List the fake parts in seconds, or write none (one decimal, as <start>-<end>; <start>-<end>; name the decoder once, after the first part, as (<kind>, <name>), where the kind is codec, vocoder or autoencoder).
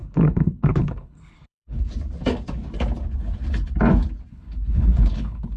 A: 0.0-1.9 (codec, HILCodec); 4.3-5.6